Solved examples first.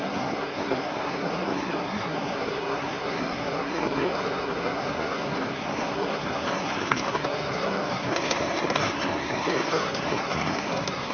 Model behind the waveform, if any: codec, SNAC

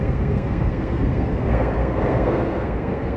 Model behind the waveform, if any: codec, SNAC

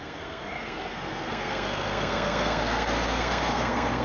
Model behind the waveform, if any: codec, SNAC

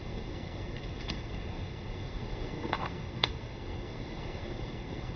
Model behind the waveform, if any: codec, SNAC